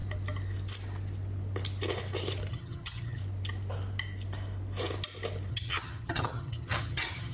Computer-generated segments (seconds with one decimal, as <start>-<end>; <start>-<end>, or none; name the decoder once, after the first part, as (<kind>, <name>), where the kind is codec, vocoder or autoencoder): 2.5-3.2 (vocoder, HiFi-GAN); 5.5-7.3